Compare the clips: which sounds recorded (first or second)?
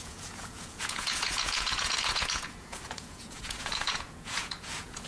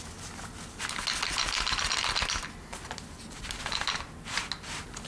second